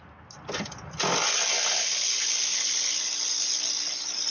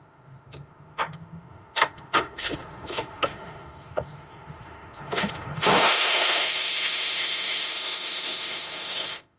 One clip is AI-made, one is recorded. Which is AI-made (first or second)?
second